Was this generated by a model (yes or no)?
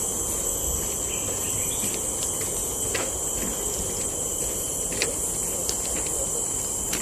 no